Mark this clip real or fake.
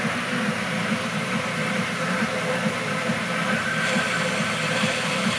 fake